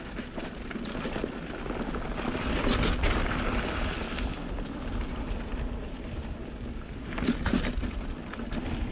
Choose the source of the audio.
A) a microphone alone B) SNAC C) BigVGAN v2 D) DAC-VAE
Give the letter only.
A